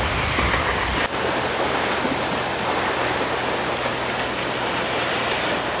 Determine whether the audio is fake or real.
real